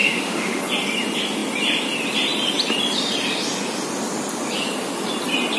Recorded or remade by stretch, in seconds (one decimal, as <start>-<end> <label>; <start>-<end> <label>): 0.0-0.6 remade; 0.6-5.6 recorded